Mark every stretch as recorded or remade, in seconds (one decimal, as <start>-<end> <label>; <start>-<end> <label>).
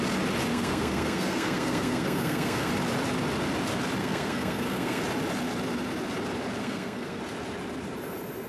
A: 0.0-0.5 recorded; 0.5-2.7 remade; 2.7-4.0 recorded; 4.0-5.0 remade; 5.0-6.6 recorded; 6.6-7.2 remade; 7.2-8.5 recorded